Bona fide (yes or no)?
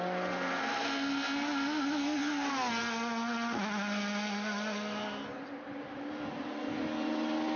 yes